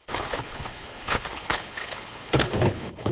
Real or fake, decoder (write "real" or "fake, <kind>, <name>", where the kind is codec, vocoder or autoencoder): fake, codec, HILCodec